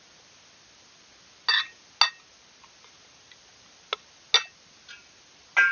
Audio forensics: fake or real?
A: real